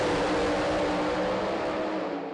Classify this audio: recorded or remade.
recorded